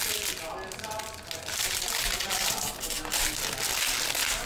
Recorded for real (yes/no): yes